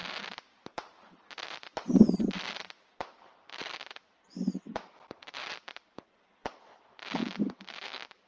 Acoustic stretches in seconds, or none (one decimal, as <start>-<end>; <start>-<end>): 0.0-5.4; 6.5-7.2